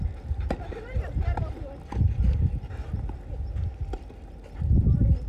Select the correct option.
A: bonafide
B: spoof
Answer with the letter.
A